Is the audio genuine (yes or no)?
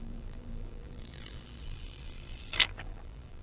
no